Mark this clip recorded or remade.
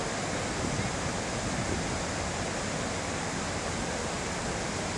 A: recorded